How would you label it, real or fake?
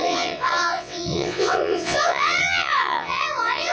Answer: fake